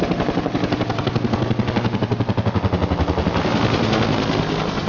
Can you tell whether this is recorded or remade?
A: recorded